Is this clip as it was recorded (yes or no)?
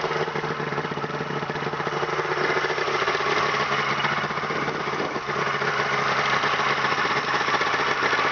yes